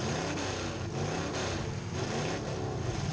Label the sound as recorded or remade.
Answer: recorded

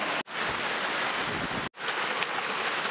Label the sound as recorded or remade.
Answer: recorded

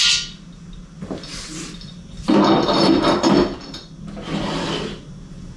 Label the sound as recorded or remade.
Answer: recorded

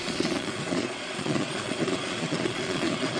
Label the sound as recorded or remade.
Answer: remade